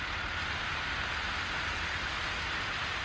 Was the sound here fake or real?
fake